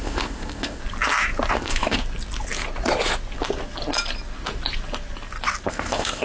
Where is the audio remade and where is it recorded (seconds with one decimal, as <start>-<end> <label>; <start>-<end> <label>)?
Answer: 0.0-0.8 remade; 0.8-1.5 recorded; 1.5-2.0 remade; 2.0-5.7 recorded; 5.7-6.2 remade